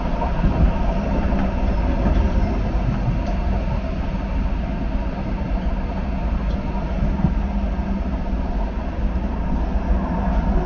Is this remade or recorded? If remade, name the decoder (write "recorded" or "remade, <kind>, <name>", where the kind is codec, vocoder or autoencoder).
recorded